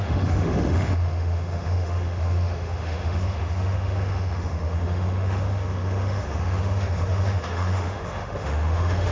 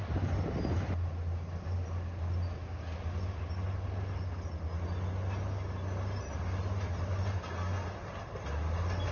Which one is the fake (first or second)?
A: first